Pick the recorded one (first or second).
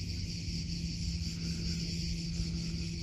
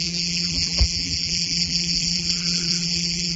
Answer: first